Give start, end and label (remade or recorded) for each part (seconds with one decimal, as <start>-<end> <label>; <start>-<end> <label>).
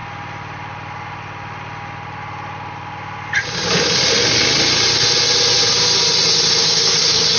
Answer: 0.0-6.6 recorded; 6.6-7.4 remade